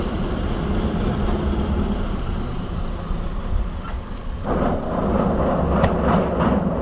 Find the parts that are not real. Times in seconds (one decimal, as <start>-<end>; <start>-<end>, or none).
0.0-3.3; 6.1-6.8